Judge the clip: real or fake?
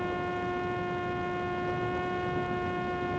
real